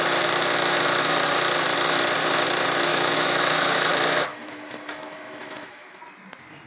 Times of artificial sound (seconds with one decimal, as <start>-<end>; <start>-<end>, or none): 2.9-3.9; 4.3-6.0